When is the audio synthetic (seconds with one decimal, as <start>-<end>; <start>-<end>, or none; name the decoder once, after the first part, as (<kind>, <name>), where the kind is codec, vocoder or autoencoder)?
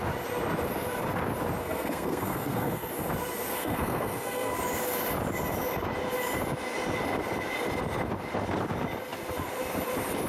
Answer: 1.6-2.9 (codec, SNAC); 3.6-4.6